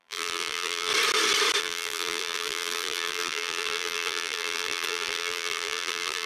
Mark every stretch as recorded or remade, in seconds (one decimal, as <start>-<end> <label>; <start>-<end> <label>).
0.0-0.9 remade; 0.9-1.6 recorded; 1.6-6.3 remade